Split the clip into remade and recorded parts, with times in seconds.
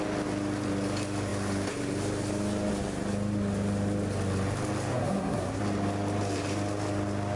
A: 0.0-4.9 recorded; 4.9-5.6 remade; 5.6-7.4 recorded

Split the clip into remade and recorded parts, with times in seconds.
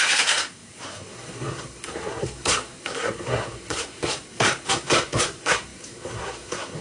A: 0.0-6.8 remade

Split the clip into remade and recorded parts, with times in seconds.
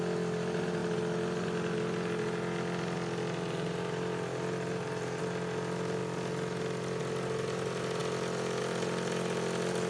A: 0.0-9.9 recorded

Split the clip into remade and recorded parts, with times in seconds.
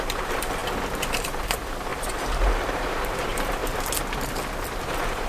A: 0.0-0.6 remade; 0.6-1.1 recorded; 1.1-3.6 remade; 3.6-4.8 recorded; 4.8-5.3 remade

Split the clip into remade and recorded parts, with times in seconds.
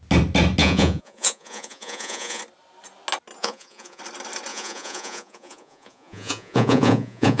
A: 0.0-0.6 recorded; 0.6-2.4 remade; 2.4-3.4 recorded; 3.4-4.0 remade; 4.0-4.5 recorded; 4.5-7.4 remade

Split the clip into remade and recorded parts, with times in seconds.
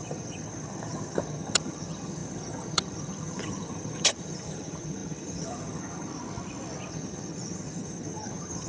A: 0.0-6.1 remade; 6.1-6.9 recorded; 6.9-8.7 remade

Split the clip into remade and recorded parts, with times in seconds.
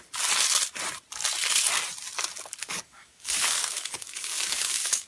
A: 0.0-2.6 recorded; 2.6-5.1 remade